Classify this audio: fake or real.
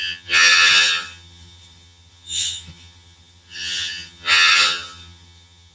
fake